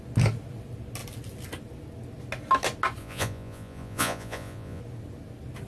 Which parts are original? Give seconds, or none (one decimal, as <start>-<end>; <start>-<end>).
0.0-3.0; 4.8-5.7